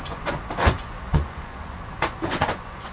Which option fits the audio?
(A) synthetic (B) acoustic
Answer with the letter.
A